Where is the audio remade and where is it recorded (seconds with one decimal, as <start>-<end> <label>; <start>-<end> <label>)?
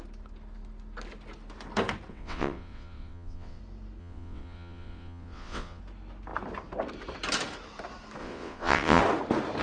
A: 0.0-2.1 recorded; 2.1-3.6 remade; 3.6-4.0 recorded; 4.0-5.8 remade; 5.8-8.2 recorded; 8.2-9.0 remade; 9.0-9.6 recorded